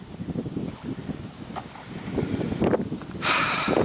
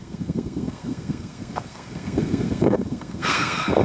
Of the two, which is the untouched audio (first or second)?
first